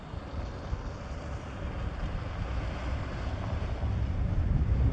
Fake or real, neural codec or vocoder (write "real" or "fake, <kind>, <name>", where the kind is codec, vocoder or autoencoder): real